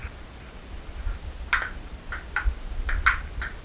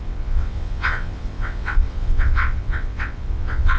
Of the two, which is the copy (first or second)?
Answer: second